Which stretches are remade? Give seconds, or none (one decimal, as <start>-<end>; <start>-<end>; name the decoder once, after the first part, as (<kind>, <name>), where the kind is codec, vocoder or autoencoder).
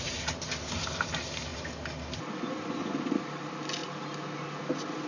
none